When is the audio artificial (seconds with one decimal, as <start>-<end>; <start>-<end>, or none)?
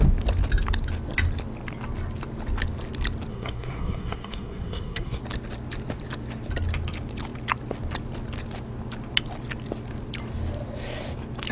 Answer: 3.3-5.2